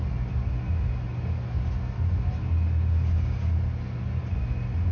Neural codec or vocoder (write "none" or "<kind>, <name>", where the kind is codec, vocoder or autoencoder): none